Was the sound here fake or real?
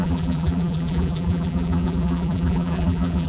fake